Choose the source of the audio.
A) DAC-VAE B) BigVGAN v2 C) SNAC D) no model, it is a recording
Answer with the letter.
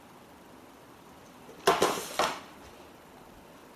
D